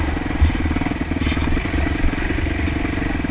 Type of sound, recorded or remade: recorded